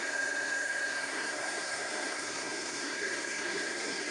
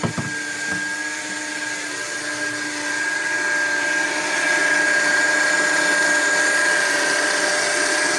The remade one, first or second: first